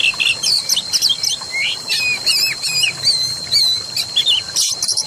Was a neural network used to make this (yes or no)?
no